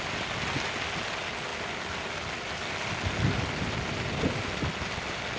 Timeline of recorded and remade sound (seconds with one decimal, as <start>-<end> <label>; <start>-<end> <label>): 0.0-5.4 recorded